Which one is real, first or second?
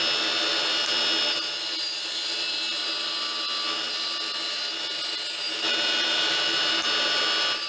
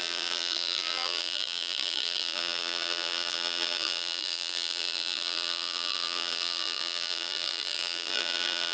first